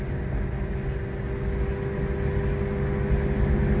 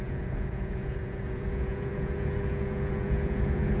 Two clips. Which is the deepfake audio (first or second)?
second